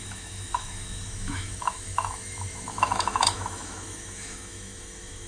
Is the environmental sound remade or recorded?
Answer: remade